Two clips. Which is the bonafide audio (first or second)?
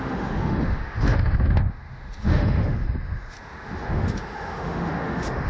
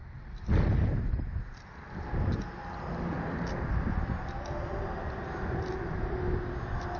second